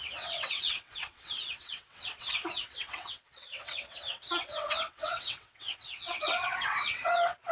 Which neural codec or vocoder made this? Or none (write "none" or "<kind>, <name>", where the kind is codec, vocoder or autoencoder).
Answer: vocoder, WaveNeXt